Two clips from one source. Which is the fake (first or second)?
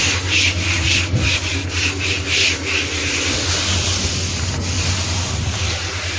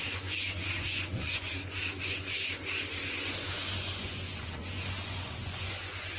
second